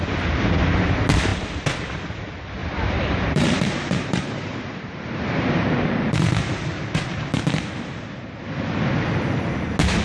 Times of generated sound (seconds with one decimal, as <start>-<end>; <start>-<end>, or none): 2.6-6.3